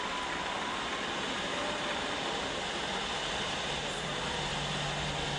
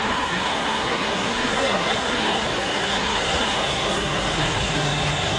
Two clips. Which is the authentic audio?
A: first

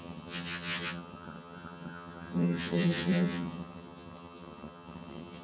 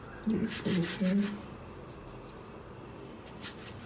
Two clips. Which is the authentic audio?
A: second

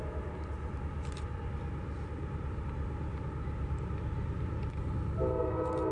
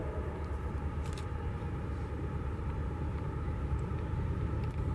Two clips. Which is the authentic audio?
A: first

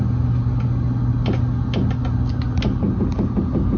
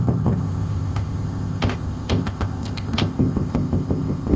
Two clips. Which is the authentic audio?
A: first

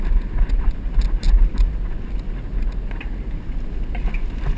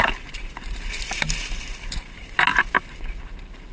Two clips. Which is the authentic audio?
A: first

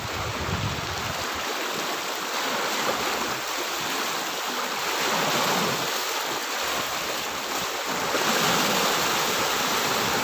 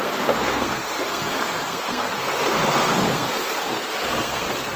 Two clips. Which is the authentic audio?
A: first